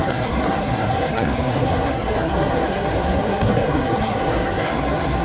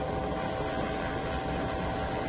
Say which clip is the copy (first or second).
first